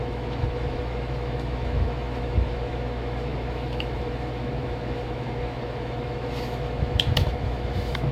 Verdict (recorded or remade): remade